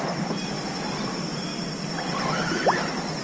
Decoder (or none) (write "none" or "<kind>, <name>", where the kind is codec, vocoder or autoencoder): vocoder, BigVGAN v2